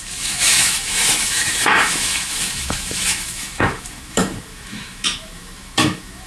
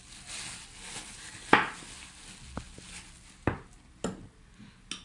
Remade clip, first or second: first